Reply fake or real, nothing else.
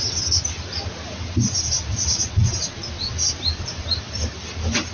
real